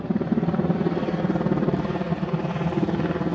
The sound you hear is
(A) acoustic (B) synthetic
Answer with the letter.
A